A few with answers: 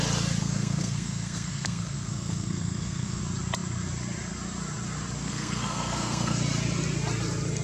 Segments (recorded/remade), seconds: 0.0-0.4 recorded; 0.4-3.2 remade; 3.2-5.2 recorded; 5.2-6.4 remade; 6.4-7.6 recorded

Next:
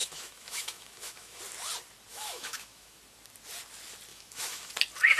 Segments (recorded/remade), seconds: 0.0-1.4 remade; 1.4-2.1 recorded; 2.1-3.0 remade; 3.0-4.1 recorded; 4.1-4.7 remade; 4.7-5.2 recorded

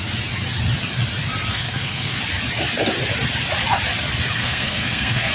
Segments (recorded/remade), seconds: 0.0-1.5 recorded; 1.5-2.2 remade; 2.2-4.4 recorded; 4.4-5.3 remade

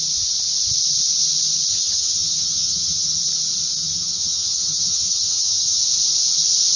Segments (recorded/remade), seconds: 0.0-1.7 recorded; 1.7-3.2 remade; 3.2-3.8 recorded; 3.8-5.8 remade; 5.8-6.8 recorded

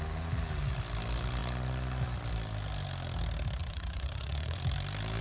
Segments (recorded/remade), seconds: 0.0-3.6 recorded; 3.6-4.6 remade; 4.6-5.2 recorded

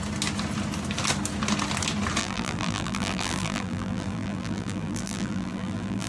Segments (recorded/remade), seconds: 0.0-2.2 recorded; 2.2-6.1 remade

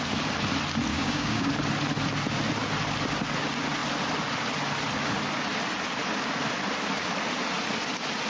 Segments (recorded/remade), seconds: 0.0-0.9 recorded; 0.9-1.5 remade; 1.5-8.3 recorded

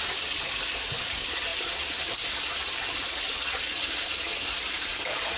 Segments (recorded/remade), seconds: 0.0-5.4 recorded